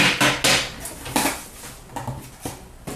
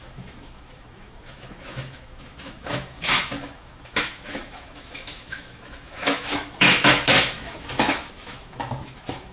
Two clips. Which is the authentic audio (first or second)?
first